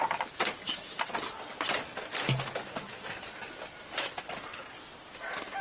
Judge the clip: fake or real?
fake